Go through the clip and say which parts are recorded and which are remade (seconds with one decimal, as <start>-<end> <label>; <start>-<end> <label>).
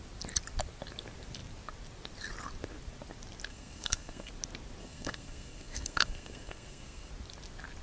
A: 0.0-3.5 recorded; 3.5-4.3 remade; 4.3-4.8 recorded; 4.8-7.1 remade; 7.1-7.8 recorded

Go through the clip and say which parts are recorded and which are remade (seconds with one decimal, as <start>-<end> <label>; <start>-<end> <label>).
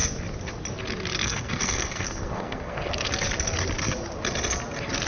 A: 0.0-1.2 recorded; 1.2-3.1 remade; 3.1-5.1 recorded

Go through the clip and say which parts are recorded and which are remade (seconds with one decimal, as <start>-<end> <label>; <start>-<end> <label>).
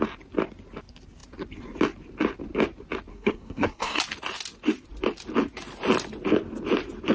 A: 0.0-3.1 recorded; 3.1-4.0 remade; 4.0-7.1 recorded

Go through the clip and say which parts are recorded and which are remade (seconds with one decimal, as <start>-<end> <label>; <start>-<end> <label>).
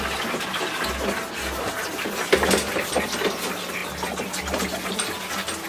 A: 0.0-5.7 recorded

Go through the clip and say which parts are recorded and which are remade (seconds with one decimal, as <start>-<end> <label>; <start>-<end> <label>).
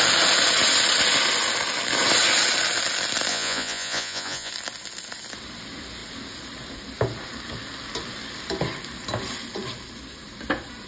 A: 0.0-3.3 recorded; 3.3-4.5 remade; 4.5-10.9 recorded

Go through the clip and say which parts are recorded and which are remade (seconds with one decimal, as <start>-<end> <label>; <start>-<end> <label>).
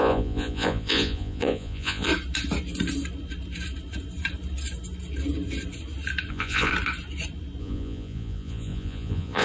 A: 0.0-2.1 remade; 2.1-6.3 recorded; 6.3-6.7 remade; 6.7-7.6 recorded; 7.6-9.4 remade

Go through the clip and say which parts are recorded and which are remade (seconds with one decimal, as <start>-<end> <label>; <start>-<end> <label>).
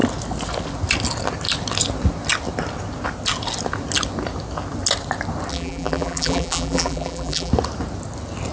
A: 0.0-5.5 recorded; 5.5-7.5 remade; 7.5-8.5 recorded